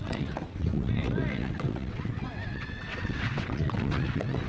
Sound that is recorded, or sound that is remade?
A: remade